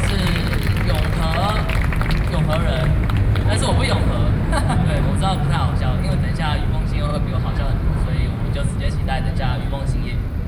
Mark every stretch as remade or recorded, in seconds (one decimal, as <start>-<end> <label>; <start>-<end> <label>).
0.0-2.8 recorded; 2.8-5.0 remade; 5.0-7.1 recorded; 7.1-8.9 remade; 8.9-10.5 recorded